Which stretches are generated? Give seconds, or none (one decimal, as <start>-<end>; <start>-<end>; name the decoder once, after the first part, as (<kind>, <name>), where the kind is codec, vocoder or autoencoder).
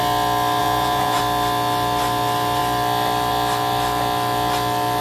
0.6-1.2 (vocoder, Vocos)